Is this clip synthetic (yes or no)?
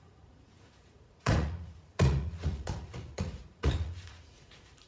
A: yes